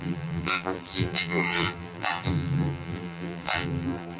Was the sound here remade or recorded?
remade